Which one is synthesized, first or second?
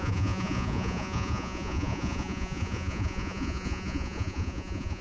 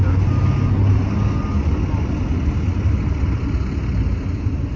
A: first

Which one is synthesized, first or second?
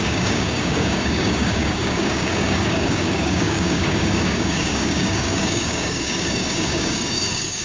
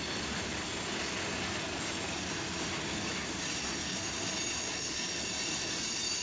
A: first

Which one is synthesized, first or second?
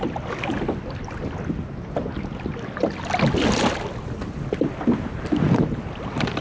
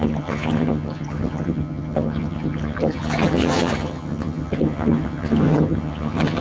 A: second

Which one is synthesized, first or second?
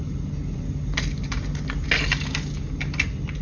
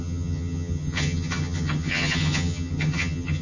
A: second